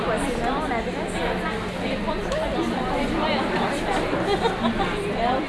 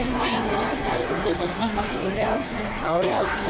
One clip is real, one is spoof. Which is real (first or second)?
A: first